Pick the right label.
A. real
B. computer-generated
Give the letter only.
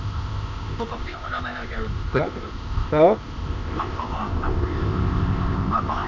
B